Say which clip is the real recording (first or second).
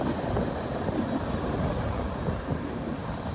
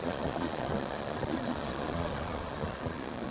first